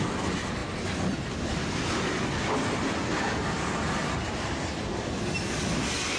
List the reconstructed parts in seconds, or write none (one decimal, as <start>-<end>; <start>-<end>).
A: none